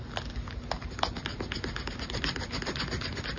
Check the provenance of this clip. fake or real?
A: real